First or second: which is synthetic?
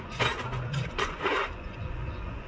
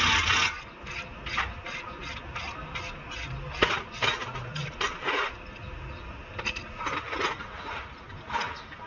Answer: first